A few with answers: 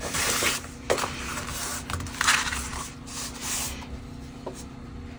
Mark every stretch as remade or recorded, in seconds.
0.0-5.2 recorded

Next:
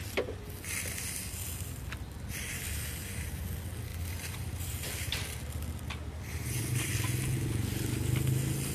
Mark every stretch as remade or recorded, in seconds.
0.0-3.9 recorded; 3.9-6.9 remade; 6.9-8.7 recorded

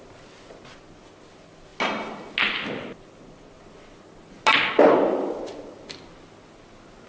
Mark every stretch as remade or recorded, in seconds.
0.0-7.1 recorded

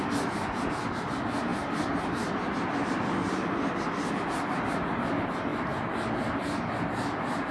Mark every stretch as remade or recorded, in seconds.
0.0-1.5 recorded; 1.5-4.1 remade; 4.1-5.5 recorded; 5.5-6.1 remade; 6.1-7.5 recorded